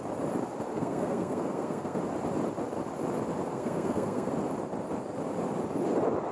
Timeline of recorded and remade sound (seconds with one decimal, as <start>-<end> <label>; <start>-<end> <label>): 0.0-0.7 recorded; 0.7-2.0 remade; 2.0-3.5 recorded; 3.5-4.3 remade; 4.3-6.3 recorded